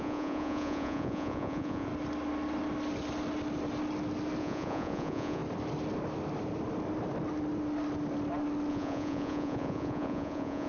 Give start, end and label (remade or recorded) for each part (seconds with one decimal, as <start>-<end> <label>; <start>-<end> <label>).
0.0-1.9 remade; 1.9-4.4 recorded; 4.4-5.4 remade; 5.4-8.7 recorded; 8.7-10.7 remade